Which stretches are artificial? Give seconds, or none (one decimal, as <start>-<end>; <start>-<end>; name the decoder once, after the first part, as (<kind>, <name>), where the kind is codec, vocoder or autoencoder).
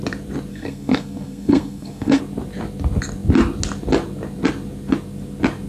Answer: 0.5-2.2 (codec, SNAC)